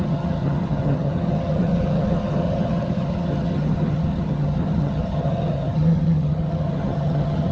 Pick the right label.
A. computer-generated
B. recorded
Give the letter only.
A